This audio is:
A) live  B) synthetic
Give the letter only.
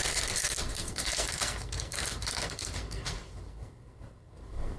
B